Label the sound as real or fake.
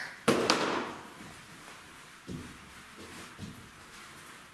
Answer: real